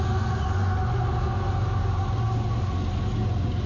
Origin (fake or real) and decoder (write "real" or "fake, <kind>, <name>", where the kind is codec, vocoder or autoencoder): real